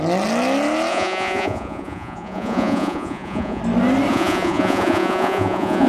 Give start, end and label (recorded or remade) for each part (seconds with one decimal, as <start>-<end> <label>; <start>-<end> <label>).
0.0-0.9 recorded; 0.9-3.6 remade; 3.6-4.1 recorded; 4.1-5.9 remade